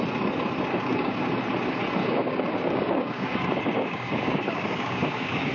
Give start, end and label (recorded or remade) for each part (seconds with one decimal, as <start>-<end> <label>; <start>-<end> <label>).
0.0-0.7 recorded; 0.7-1.2 remade; 1.2-2.0 recorded; 2.0-5.5 remade